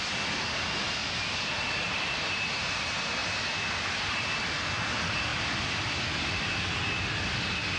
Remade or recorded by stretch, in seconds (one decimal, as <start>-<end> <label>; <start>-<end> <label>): 0.0-1.0 recorded; 1.0-2.8 remade; 2.8-7.8 recorded